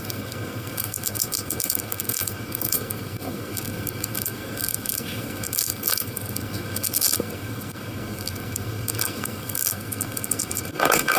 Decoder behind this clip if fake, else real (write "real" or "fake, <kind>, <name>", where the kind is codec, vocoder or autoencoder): fake, codec, SNAC